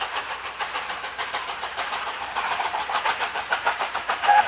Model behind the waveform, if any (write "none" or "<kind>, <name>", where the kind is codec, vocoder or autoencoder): vocoder, BigVGAN v2